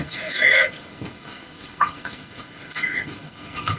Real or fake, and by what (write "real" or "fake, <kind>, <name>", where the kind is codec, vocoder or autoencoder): fake, codec, SNAC